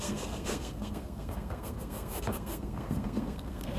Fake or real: fake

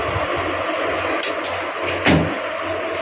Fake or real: real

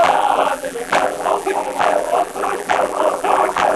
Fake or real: fake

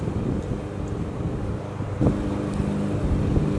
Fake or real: real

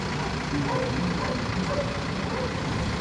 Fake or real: real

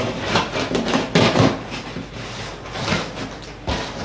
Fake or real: real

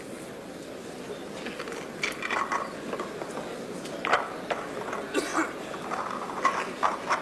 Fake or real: real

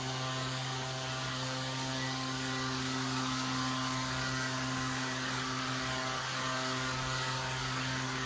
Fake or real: fake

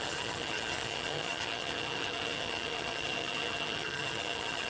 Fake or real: fake